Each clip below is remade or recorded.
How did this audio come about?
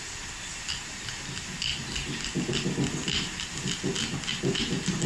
recorded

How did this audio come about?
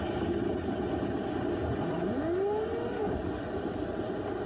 recorded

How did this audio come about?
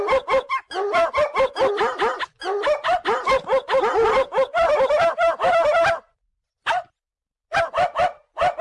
recorded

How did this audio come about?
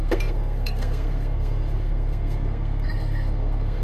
remade